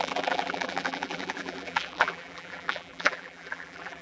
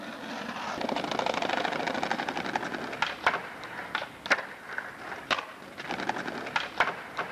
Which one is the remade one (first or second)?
first